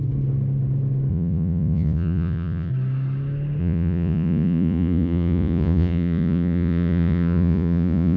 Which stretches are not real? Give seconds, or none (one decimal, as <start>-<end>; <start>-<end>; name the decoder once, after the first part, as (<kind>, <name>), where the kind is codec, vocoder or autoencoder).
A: 1.1-2.7 (vocoder, Vocos); 3.6-8.2